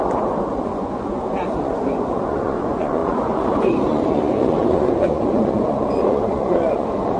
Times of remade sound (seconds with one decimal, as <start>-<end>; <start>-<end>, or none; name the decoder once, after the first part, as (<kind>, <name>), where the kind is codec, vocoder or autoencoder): 0.0-7.2 (vocoder, Vocos)